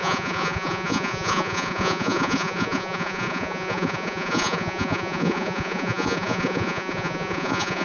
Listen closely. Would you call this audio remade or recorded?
remade